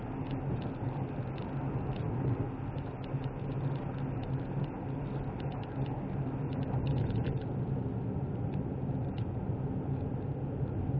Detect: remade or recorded recorded